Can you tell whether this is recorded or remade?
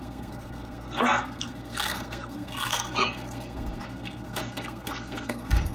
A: remade